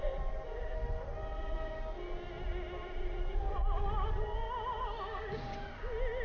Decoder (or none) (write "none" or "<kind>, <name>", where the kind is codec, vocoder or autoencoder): none